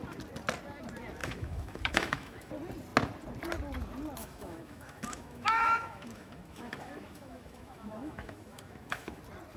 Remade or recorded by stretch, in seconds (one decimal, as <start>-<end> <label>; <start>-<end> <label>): 0.0-1.2 recorded; 1.2-2.5 remade; 2.5-4.2 recorded; 4.2-9.2 remade; 9.2-9.6 recorded